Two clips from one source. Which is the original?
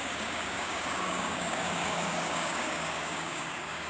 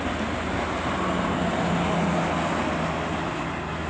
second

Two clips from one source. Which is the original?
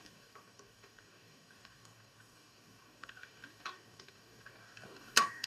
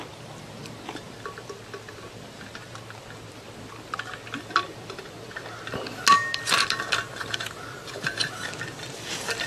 second